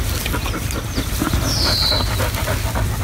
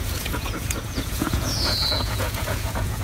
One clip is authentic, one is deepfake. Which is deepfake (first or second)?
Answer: second